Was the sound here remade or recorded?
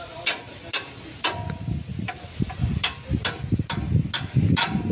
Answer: recorded